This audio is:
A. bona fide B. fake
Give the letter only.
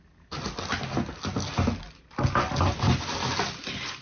A